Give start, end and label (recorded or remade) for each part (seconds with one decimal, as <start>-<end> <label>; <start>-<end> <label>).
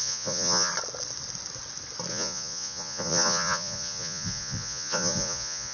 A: 0.0-0.7 remade; 0.7-2.1 recorded; 2.1-5.7 remade